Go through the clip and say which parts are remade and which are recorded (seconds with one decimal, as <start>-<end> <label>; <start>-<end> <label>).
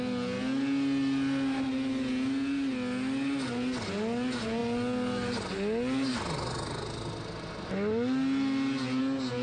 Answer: 0.0-9.4 recorded